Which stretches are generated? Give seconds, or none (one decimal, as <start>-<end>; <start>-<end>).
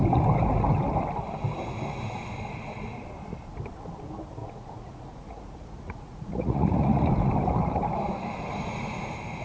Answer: 4.4-7.1